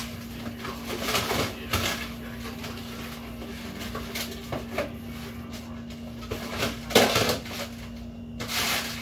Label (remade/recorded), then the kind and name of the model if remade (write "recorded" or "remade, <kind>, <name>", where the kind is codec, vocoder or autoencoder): recorded